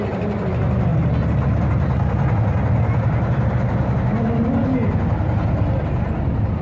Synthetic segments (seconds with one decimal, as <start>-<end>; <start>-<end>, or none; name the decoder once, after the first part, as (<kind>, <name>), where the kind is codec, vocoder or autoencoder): none